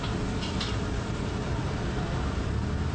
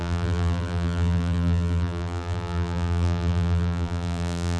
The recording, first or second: first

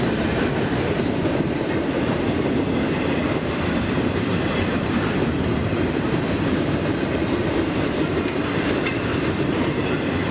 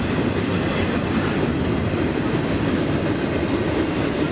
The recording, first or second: second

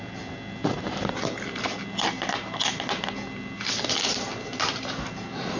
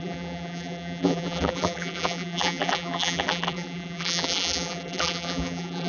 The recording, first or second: first